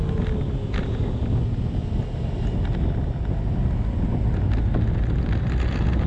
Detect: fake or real real